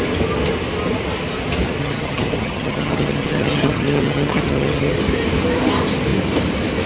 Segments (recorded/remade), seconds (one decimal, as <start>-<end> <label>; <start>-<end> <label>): 0.0-1.8 recorded; 1.8-4.9 remade; 4.9-6.9 recorded